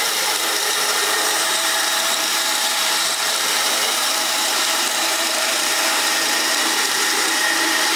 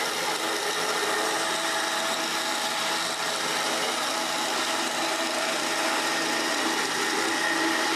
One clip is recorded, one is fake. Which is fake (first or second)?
first